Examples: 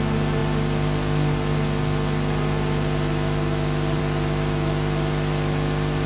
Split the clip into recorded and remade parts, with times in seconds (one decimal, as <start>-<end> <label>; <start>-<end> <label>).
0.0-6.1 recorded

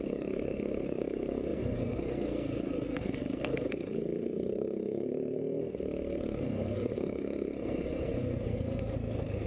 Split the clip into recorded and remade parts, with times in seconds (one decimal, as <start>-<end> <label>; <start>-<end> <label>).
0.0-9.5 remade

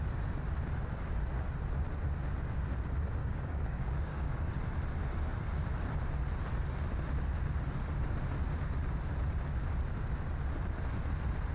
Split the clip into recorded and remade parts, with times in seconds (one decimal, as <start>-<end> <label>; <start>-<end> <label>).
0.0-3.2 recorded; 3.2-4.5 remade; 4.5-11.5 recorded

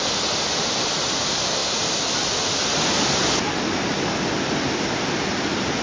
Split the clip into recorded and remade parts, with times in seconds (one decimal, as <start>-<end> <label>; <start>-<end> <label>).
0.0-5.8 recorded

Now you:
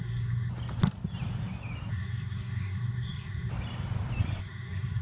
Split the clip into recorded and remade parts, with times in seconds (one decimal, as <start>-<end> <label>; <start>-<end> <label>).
0.0-0.5 remade; 0.5-1.9 recorded; 1.9-3.5 remade; 3.5-4.4 recorded; 4.4-5.0 remade